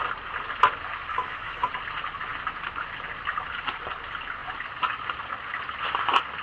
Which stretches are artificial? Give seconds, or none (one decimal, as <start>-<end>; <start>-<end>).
1.1-1.7